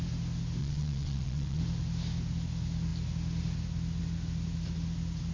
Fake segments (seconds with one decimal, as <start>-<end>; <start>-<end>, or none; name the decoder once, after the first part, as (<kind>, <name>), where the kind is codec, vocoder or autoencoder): 0.6-1.6 (vocoder, WaveNeXt)